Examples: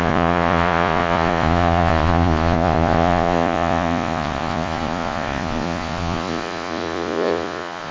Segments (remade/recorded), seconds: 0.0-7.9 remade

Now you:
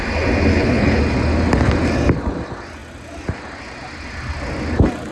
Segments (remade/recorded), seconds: 0.0-0.5 recorded; 0.5-1.0 remade; 1.0-5.1 recorded

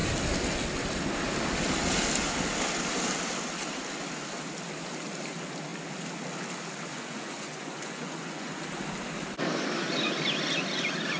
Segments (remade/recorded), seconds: 0.0-6.9 recorded; 6.9-8.6 remade; 8.6-11.2 recorded

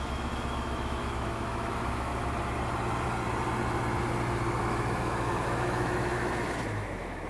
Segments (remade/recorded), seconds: 0.0-2.1 remade; 2.1-4.6 recorded; 4.6-7.3 remade

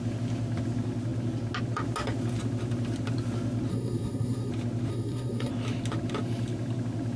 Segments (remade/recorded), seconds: 0.0-3.7 recorded; 3.7-4.5 remade; 4.5-4.9 recorded; 4.9-5.5 remade; 5.5-7.2 recorded